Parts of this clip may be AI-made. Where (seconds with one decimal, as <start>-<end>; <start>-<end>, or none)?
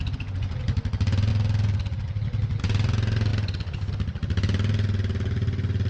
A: none